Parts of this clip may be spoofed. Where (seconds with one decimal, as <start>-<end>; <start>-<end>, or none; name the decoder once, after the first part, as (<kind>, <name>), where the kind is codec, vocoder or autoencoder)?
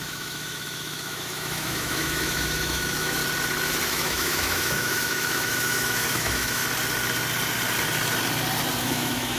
0.0-3.2 (autoencoder, DAC-VAE); 3.9-6.6; 8.8-9.4